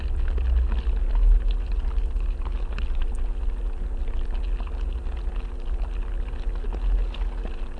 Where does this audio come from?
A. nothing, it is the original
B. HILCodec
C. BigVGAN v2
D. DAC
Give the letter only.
A